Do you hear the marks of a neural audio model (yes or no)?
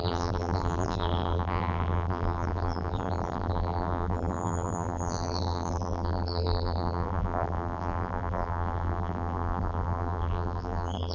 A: yes